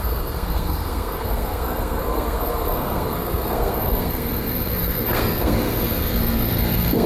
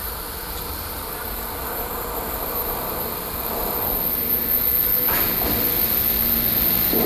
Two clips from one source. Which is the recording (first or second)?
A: second